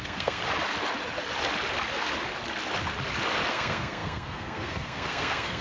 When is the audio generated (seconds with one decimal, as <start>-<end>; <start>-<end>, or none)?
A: 0.0-0.4; 3.5-5.6